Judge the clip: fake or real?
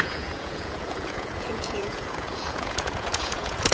fake